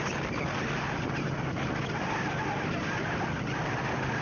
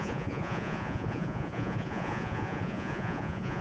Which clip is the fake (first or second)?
second